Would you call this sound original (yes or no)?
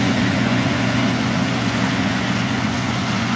no